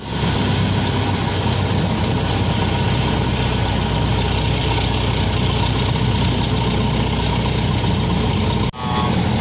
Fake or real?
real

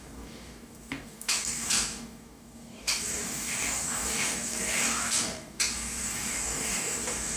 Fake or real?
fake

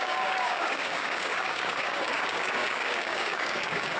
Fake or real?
fake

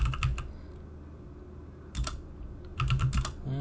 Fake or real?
real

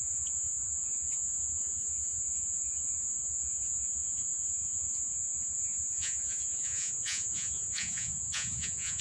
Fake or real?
fake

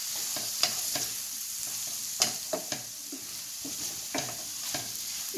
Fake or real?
fake